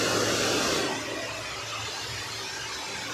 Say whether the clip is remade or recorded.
recorded